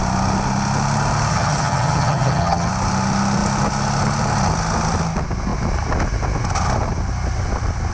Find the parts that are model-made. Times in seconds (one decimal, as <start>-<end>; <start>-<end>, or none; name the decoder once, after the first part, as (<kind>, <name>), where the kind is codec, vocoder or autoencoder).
1.3-2.7 (vocoder, HiFi-GAN)